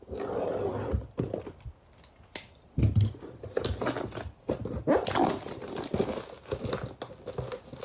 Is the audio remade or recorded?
recorded